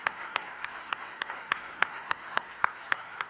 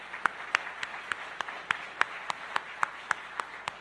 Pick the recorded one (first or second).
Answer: second